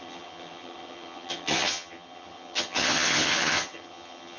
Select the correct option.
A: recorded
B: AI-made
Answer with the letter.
B